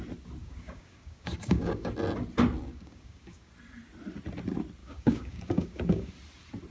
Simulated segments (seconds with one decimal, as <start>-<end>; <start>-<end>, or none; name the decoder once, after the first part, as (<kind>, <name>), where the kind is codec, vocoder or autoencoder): 0.4-1.9 (codec, DAC); 2.7-3.5; 4.8-6.1

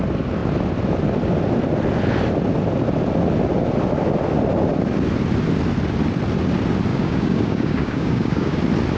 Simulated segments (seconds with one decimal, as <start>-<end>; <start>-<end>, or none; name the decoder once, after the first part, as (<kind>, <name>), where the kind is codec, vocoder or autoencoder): 6.9-8.6 (codec, DAC)

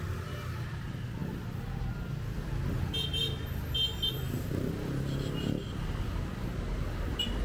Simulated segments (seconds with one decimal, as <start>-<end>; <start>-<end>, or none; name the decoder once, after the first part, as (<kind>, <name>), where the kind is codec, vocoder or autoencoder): none